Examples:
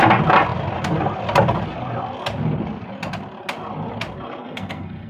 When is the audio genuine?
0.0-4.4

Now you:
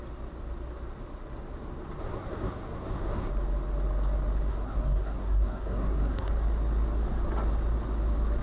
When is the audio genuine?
0.0-2.0; 3.3-4.5; 6.3-8.4

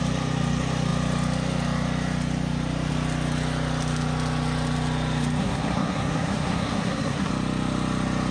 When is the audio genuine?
0.0-5.4; 7.3-8.3

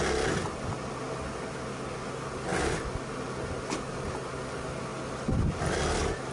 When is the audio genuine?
0.0-6.3

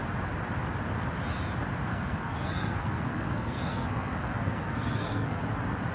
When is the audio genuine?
0.0-1.9; 5.4-5.9

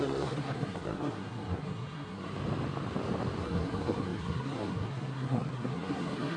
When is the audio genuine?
2.3-3.4

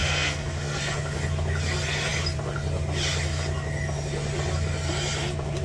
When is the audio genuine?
0.8-5.6

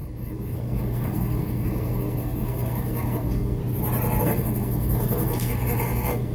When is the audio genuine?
3.6-4.2